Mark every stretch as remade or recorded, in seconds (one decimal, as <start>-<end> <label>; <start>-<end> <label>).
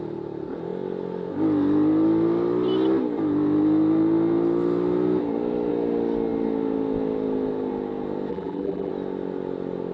0.0-8.3 recorded; 8.3-8.9 remade; 8.9-9.9 recorded